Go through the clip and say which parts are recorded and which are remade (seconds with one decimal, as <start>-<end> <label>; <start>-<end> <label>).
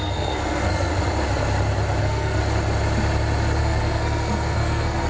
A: 0.0-0.9 remade; 0.9-2.0 recorded; 2.0-2.4 remade; 2.4-3.6 recorded; 3.6-5.1 remade